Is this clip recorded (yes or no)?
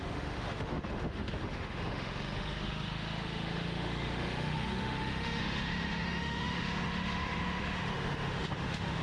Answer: no